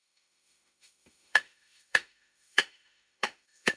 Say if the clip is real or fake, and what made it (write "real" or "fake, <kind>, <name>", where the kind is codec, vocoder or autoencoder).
fake, autoencoder, DAC-VAE